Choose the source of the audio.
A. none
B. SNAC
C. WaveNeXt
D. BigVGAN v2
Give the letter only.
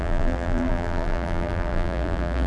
D